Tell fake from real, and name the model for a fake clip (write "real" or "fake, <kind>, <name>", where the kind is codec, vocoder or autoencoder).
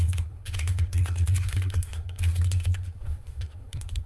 fake, codec, SNAC